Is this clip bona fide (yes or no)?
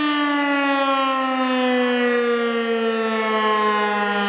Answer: yes